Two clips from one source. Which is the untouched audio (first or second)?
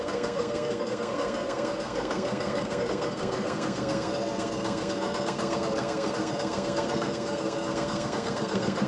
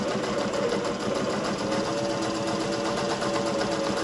second